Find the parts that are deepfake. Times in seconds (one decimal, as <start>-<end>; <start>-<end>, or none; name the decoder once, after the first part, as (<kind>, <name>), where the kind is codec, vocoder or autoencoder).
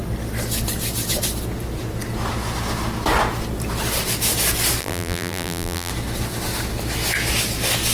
4.8-5.9 (vocoder, BigVGAN v2)